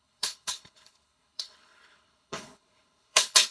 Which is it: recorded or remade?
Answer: remade